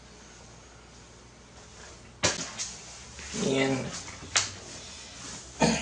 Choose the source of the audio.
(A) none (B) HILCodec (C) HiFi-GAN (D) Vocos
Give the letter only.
A